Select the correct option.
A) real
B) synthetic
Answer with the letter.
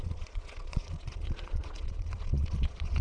B